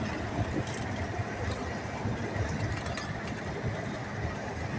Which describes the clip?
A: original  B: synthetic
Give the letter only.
A